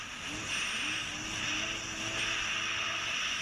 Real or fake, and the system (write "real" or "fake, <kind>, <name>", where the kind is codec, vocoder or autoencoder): real